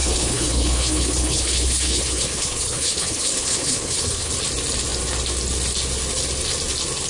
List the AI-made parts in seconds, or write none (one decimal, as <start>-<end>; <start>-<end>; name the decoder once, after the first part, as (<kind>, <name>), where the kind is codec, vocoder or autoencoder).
0.0-4.3 (codec, HILCodec)